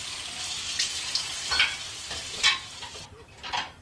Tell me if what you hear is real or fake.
real